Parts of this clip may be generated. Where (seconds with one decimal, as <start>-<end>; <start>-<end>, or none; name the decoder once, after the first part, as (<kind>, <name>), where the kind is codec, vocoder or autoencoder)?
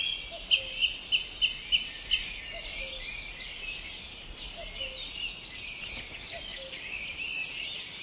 none